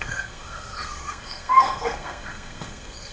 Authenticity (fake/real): fake